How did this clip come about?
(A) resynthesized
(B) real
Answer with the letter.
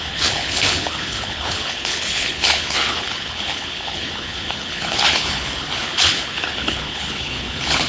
A